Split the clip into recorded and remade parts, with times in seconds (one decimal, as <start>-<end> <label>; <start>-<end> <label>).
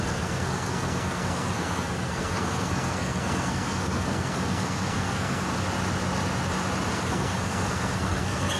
0.0-5.5 remade; 5.5-6.9 recorded; 6.9-8.6 remade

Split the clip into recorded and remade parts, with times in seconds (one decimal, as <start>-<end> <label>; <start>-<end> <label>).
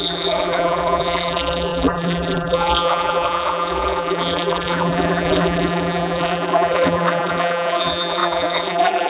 0.0-9.1 remade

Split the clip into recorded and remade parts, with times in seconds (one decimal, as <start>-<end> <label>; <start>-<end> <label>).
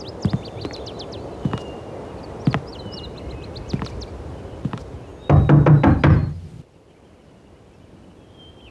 0.0-8.7 recorded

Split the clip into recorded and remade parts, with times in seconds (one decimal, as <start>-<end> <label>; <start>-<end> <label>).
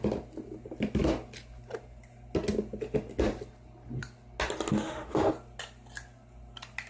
0.0-4.7 recorded; 4.7-5.3 remade; 5.3-6.9 recorded